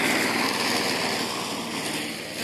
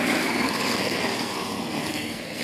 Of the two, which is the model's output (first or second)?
second